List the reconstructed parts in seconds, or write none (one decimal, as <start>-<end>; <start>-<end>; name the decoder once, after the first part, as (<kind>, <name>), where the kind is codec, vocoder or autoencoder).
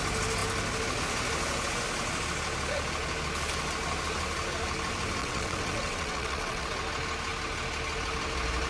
5.2-6.7 (vocoder, WaveNeXt)